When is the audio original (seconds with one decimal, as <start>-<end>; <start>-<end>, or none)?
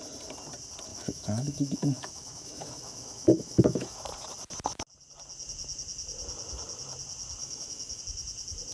0.0-0.9; 4.0-7.4; 8.0-8.7